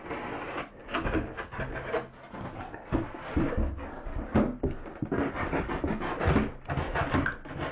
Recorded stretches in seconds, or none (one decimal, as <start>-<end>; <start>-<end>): 0.0-7.7